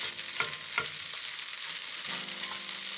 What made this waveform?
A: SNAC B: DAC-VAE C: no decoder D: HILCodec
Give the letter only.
C